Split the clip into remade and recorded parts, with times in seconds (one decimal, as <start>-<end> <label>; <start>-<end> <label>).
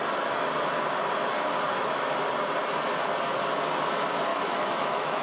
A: 0.0-4.3 recorded; 4.3-5.2 remade